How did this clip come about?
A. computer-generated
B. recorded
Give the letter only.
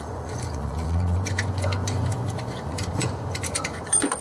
A